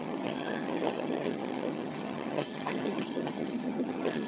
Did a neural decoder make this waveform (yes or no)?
yes